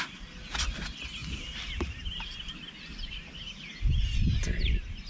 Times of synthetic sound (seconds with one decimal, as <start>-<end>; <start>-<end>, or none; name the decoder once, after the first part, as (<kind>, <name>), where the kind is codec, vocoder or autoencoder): none